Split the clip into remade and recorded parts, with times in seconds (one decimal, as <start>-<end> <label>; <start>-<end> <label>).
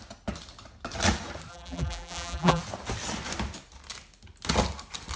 0.0-1.5 recorded; 1.5-2.6 remade; 2.6-5.2 recorded